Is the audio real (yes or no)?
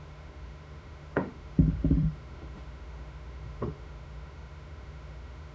no